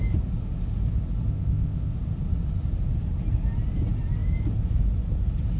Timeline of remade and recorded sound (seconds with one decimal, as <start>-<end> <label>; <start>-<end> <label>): 0.0-1.3 recorded; 1.3-1.9 remade; 1.9-5.6 recorded